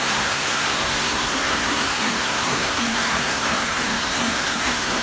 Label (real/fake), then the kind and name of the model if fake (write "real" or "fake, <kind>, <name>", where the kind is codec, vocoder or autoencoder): fake, codec, SNAC